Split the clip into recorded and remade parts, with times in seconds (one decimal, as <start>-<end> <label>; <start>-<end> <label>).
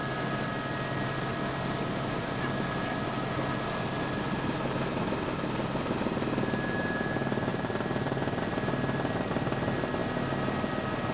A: 0.0-11.1 recorded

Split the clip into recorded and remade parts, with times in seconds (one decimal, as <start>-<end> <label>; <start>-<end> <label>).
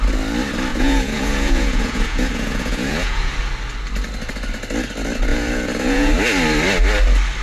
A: 0.0-0.7 recorded; 0.7-3.4 remade; 3.4-5.3 recorded; 5.3-6.1 remade; 6.1-7.4 recorded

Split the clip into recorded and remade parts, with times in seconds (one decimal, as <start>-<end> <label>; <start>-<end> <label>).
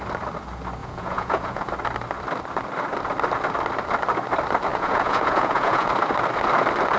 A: 0.0-0.8 recorded; 0.8-1.7 remade; 1.7-4.7 recorded; 4.7-5.9 remade; 5.9-7.0 recorded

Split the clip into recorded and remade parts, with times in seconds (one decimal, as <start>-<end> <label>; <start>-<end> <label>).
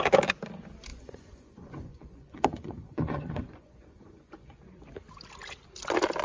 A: 0.0-0.9 recorded; 0.9-4.6 remade; 4.6-6.2 recorded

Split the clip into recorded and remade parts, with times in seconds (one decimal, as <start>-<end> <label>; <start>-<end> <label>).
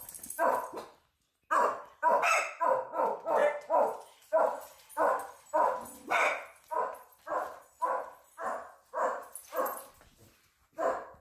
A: 0.0-11.2 recorded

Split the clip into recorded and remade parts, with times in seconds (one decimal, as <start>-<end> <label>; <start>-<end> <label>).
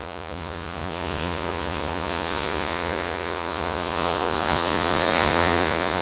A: 0.0-6.0 remade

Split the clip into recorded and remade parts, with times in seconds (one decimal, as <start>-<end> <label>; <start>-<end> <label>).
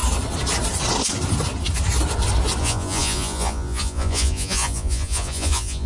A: 0.0-2.6 recorded; 2.6-5.9 remade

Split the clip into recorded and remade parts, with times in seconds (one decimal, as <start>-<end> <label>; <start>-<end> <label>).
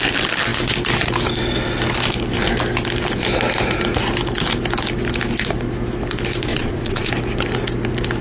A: 0.0-6.5 recorded; 6.5-7.1 remade; 7.1-8.2 recorded